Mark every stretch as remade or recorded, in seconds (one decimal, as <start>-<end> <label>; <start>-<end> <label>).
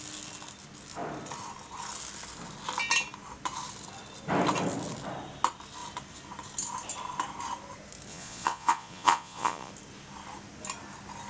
0.0-8.1 recorded; 8.1-9.7 remade; 9.7-11.3 recorded